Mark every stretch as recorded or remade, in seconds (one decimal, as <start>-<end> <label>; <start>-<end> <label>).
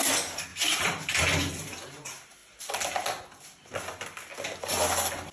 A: 0.0-0.5 recorded; 0.5-1.2 remade; 1.2-5.3 recorded